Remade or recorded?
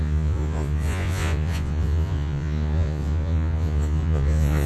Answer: remade